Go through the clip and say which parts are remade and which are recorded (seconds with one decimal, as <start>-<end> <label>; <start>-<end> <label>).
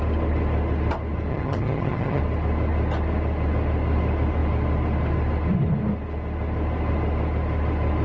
0.0-1.3 recorded; 1.3-2.2 remade; 2.2-8.0 recorded